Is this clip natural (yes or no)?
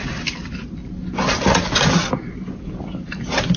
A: yes